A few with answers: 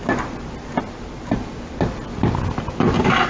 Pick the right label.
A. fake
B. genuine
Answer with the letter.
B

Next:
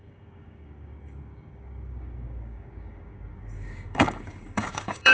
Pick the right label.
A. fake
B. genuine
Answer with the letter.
A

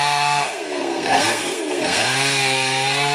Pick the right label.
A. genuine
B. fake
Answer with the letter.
B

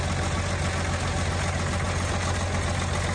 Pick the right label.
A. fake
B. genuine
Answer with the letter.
B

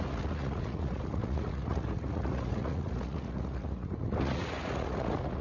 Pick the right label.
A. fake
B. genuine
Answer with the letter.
A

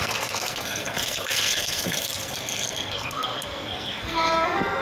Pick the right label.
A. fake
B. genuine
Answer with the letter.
A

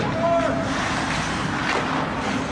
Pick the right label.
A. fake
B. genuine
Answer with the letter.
B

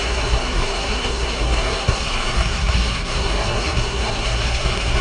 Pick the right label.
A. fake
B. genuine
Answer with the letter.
A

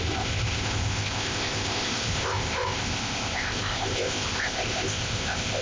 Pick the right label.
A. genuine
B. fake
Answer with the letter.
B